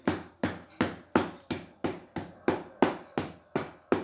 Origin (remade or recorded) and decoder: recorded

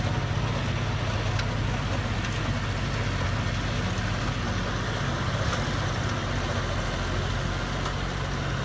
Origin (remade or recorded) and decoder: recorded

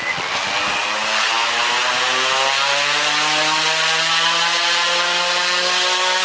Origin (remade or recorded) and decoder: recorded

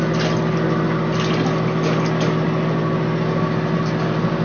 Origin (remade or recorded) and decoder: recorded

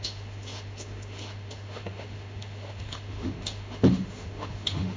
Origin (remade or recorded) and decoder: remade, autoencoder, DAC-VAE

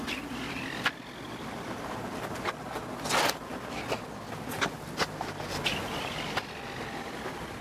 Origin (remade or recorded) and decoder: recorded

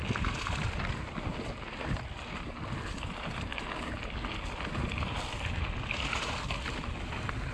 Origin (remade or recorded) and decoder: recorded